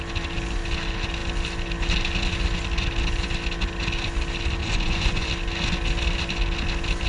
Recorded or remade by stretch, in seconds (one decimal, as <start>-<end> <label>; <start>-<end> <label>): 0.0-4.6 recorded; 4.6-5.3 remade; 5.3-7.1 recorded